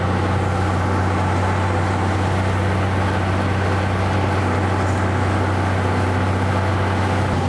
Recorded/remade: recorded